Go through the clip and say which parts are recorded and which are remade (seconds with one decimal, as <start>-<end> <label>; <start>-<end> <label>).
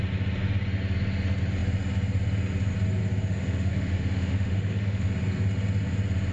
0.0-3.3 recorded; 3.3-5.1 remade; 5.1-6.3 recorded